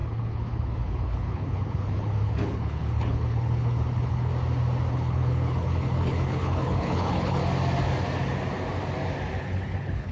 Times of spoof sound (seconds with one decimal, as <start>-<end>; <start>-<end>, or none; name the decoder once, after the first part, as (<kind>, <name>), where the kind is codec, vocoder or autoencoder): 0.0-4.3 (codec, HILCodec); 4.9-7.4; 9.4-10.1